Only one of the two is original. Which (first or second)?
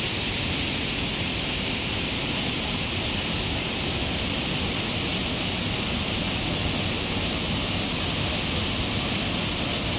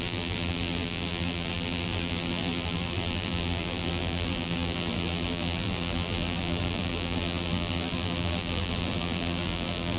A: first